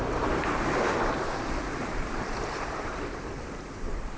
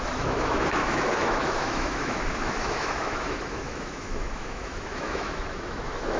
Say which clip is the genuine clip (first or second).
first